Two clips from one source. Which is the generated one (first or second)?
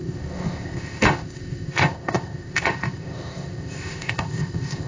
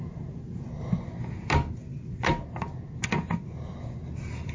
first